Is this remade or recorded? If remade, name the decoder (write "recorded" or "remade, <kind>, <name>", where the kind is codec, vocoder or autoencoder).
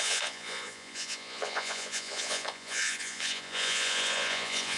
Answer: remade, vocoder, Vocos